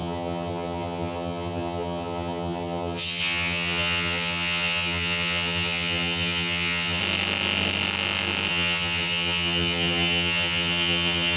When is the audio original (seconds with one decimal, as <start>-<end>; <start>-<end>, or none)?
7.0-8.5